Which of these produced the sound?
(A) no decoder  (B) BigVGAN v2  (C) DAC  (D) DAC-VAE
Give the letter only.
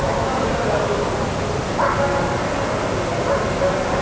A